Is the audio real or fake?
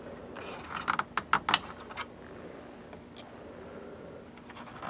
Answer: real